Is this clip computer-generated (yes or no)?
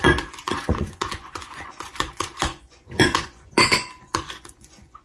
yes